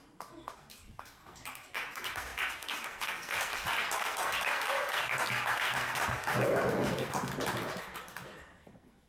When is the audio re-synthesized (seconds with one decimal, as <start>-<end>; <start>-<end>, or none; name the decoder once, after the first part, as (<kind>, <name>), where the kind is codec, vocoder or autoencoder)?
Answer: 0.0-7.3 (codec, SNAC); 7.8-9.1